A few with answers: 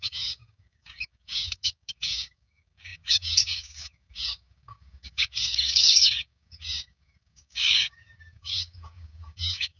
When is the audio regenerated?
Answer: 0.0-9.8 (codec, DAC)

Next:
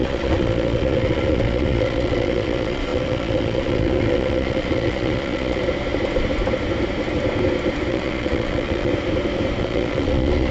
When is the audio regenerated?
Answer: 0.0-5.6 (vocoder, Vocos); 7.9-8.9; 9.6-10.5

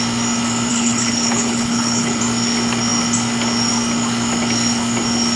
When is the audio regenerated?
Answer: 0.7-2.2 (codec, HILCodec)